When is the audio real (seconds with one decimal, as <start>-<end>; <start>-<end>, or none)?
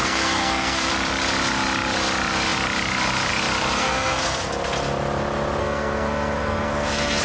0.9-3.8; 4.5-5.6